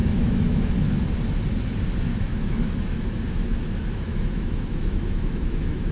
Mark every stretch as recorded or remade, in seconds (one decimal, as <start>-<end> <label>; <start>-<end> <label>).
0.0-0.7 remade; 0.7-2.1 recorded; 2.1-5.9 remade